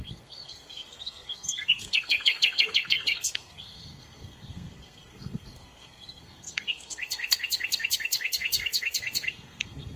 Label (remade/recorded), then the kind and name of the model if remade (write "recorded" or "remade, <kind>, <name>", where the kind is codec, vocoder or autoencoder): remade, codec, SNAC